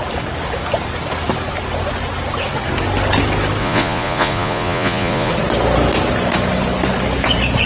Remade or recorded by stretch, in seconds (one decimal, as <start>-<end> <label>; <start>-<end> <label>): 0.0-3.6 recorded; 3.6-5.3 remade; 5.3-7.7 recorded

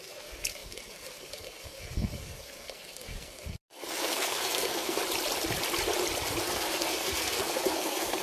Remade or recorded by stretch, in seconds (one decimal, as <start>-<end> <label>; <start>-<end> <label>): 0.0-5.0 remade; 5.0-6.4 recorded; 6.4-8.2 remade

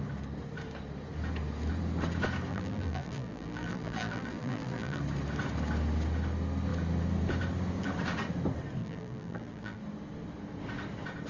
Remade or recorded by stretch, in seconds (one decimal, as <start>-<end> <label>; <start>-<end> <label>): 0.0-2.5 recorded; 2.5-5.0 remade; 5.0-8.8 recorded; 8.8-9.8 remade; 9.8-11.3 recorded

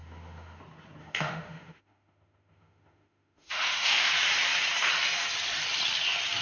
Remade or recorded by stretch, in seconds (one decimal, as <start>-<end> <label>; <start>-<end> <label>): 0.0-0.6 remade; 0.6-1.0 recorded; 1.0-4.1 remade; 4.1-6.4 recorded